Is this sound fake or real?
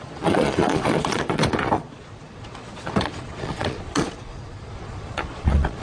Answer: fake